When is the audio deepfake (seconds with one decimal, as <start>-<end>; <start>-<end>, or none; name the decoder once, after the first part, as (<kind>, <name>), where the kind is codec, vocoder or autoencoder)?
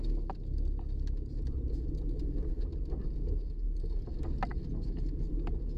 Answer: none